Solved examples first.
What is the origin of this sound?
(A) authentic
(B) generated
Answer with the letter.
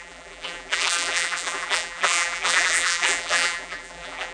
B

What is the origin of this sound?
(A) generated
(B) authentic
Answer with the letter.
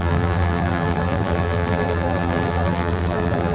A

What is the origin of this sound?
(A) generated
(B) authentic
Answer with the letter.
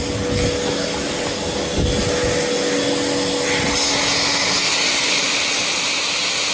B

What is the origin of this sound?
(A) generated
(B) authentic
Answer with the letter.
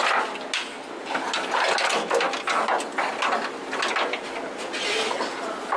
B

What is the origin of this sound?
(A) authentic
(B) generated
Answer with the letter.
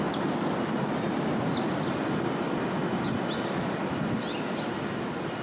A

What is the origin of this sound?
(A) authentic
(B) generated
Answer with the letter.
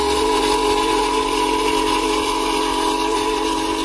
A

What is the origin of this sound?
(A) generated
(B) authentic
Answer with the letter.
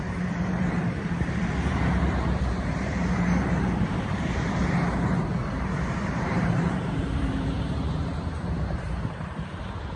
A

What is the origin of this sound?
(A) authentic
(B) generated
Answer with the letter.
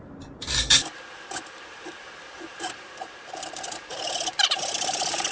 B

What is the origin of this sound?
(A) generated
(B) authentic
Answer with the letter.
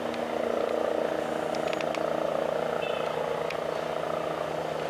B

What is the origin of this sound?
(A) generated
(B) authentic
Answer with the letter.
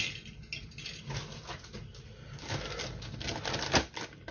B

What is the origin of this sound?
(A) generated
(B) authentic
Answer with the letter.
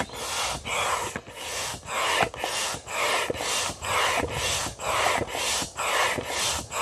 B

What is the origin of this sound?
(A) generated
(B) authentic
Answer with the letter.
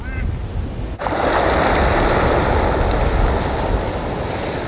B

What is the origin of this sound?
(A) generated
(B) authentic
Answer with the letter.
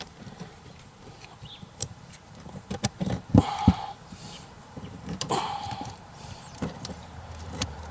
A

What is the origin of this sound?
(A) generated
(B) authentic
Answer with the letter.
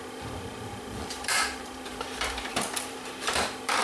A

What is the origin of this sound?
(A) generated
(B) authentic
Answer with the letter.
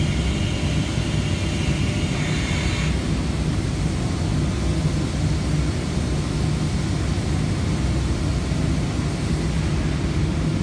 B